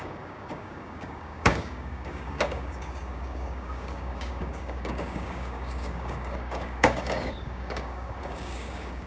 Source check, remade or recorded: remade